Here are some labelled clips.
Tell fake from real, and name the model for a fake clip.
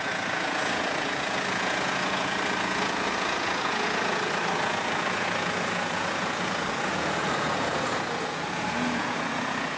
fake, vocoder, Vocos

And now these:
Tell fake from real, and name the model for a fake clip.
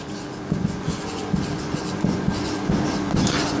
fake, vocoder, Vocos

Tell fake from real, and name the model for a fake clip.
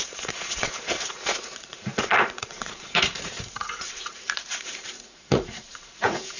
fake, vocoder, Vocos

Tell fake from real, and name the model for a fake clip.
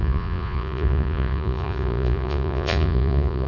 fake, vocoder, Vocos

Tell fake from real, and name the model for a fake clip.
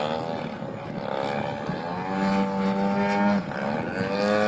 real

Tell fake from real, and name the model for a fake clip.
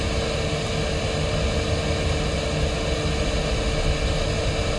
real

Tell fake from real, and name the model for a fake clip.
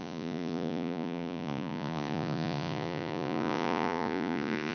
fake, vocoder, Vocos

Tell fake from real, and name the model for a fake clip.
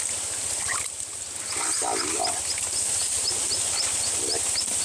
real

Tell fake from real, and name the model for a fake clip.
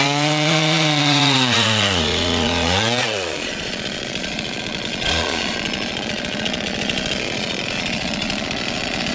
fake, vocoder, Vocos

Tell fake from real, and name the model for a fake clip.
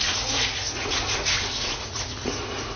fake, vocoder, Vocos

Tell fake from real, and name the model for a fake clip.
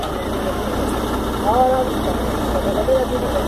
real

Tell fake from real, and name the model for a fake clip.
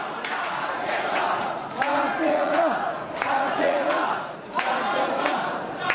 fake, vocoder, Vocos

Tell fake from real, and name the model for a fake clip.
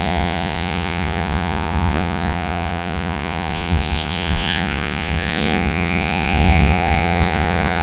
fake, vocoder, Vocos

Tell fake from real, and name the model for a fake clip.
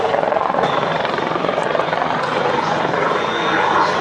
fake, vocoder, Vocos